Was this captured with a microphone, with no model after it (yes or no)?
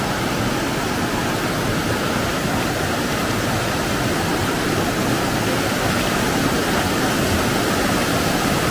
yes